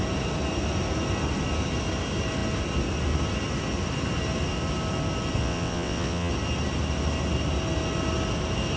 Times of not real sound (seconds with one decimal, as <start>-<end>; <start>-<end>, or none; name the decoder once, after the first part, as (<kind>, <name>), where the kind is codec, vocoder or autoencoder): 5.4-6.3 (vocoder, WaveNeXt)